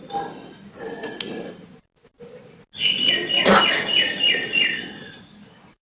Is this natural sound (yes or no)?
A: yes